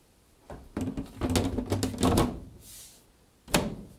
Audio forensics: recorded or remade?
recorded